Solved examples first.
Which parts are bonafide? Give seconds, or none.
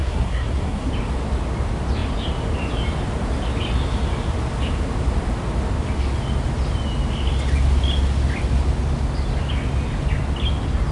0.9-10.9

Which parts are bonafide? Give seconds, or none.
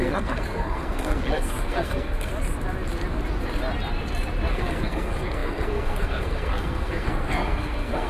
2.3-4.5